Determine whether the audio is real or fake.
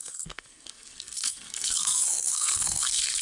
fake